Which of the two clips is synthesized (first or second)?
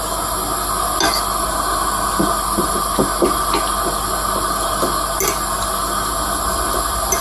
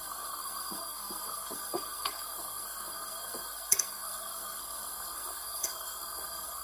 second